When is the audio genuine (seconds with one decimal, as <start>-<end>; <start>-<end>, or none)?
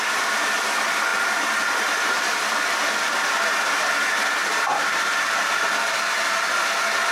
0.0-7.1